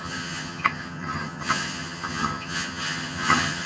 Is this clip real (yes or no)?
no